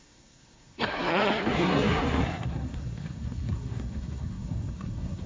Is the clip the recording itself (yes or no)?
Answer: no